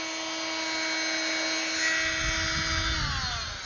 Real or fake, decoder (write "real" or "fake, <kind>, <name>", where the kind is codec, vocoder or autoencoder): real